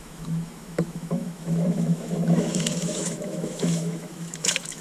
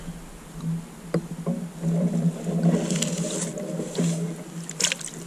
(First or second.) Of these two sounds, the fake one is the first